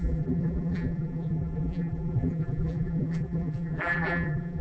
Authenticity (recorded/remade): remade